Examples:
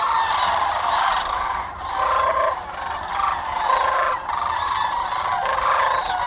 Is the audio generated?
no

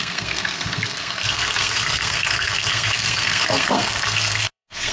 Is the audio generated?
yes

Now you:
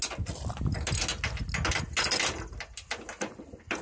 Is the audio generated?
no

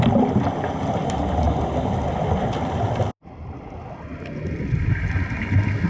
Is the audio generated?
no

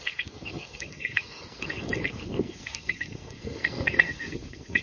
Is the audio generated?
yes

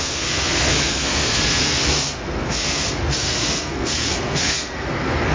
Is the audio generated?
yes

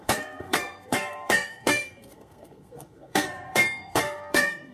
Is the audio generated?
yes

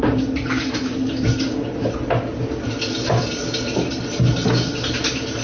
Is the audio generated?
no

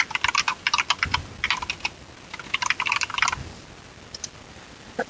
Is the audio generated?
no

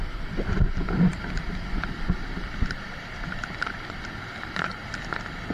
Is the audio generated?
no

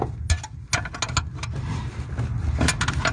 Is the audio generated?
no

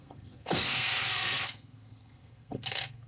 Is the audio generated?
yes